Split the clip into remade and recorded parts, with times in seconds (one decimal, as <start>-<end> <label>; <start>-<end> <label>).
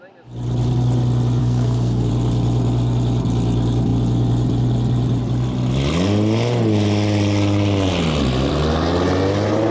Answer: 0.0-1.4 recorded; 1.4-2.1 remade; 2.1-9.7 recorded